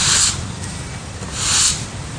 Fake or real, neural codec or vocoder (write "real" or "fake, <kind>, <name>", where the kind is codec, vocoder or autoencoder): real